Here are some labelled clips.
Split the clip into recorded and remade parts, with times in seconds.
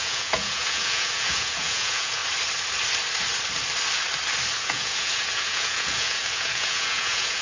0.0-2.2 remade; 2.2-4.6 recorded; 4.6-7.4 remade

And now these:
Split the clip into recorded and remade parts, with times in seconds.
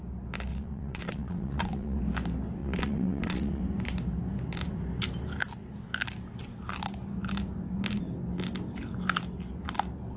0.0-0.5 recorded; 0.5-2.0 remade; 2.0-2.6 recorded; 2.6-3.6 remade; 3.6-10.2 recorded